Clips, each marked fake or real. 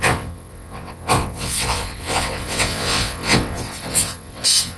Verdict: fake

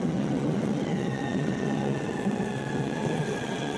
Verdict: fake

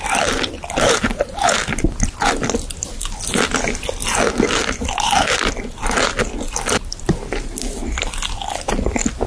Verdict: real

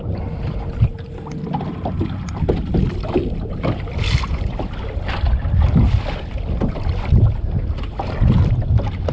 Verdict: real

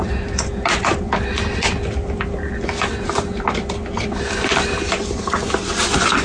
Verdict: real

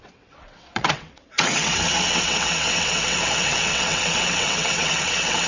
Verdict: fake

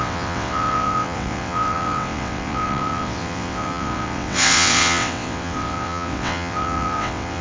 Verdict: fake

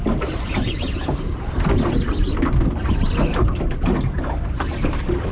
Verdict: real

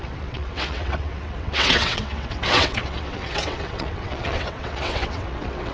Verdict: fake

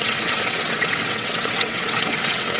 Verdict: fake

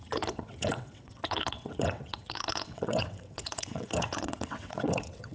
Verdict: fake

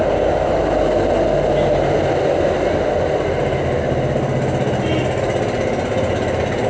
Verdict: real